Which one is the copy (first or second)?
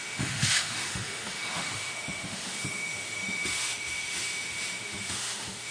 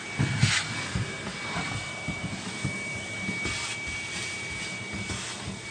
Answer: first